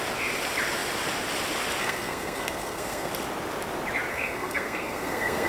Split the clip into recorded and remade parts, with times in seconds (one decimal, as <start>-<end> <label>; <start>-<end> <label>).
0.0-1.8 recorded; 1.8-3.1 remade; 3.1-4.1 recorded; 4.1-5.5 remade